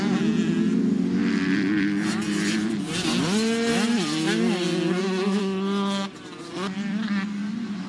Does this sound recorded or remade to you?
recorded